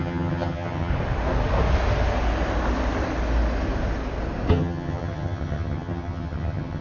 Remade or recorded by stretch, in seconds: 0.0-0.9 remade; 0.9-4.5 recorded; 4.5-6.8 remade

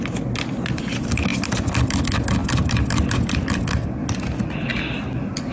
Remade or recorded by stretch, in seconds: 0.0-1.3 recorded; 1.3-2.0 remade; 2.0-2.4 recorded; 2.4-3.1 remade; 3.1-5.5 recorded

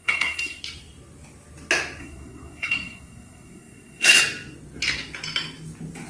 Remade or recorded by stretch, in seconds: 0.0-0.6 remade; 0.6-2.0 recorded; 2.0-4.2 remade; 4.2-6.1 recorded

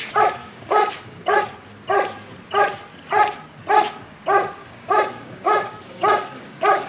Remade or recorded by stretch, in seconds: 0.0-0.4 recorded; 0.4-1.4 remade; 1.4-4.6 recorded; 4.6-6.9 remade

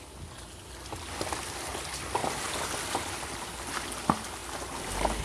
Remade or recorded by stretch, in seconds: 0.0-5.2 recorded

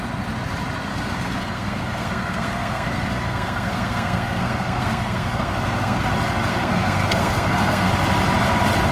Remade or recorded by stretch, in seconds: 0.0-0.9 recorded; 0.9-6.1 remade; 6.1-6.5 recorded; 6.5-7.9 remade; 7.9-8.9 recorded

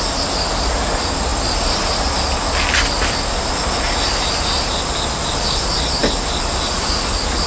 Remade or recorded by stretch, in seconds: 0.0-7.5 recorded

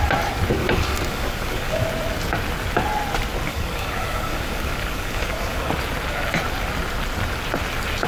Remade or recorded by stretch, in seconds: 0.0-0.6 recorded; 0.6-1.8 remade; 1.8-3.5 recorded; 3.5-5.7 remade; 5.7-8.1 recorded